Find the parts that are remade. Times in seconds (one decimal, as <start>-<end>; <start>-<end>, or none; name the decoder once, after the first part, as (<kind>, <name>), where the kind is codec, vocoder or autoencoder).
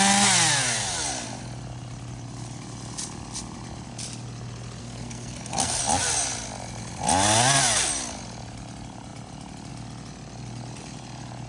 4.8-5.8 (codec, SNAC)